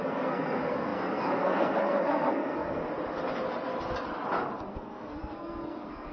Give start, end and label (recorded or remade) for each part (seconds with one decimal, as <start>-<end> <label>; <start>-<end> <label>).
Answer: 0.0-2.8 remade; 2.8-4.7 recorded; 4.7-6.1 remade